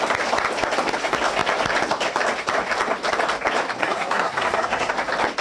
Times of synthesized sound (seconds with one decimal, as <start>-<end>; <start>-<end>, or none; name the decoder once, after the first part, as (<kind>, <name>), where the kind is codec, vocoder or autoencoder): 3.8-4.9 (codec, SNAC)